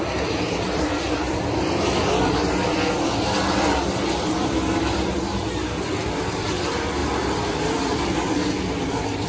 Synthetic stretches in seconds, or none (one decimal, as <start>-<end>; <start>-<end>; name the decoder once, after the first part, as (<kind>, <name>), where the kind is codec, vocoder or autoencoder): 0.0-9.3 (vocoder, BigVGAN v2)